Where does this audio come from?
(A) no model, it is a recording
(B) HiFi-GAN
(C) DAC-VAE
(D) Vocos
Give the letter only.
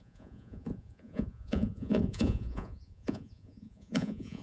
D